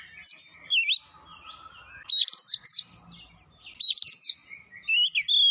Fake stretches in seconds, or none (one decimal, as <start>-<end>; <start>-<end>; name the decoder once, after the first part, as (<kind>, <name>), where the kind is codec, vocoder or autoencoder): none